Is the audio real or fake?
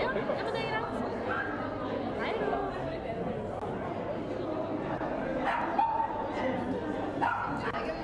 real